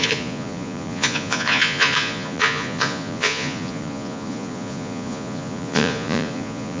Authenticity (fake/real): fake